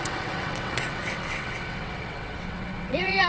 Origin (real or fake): fake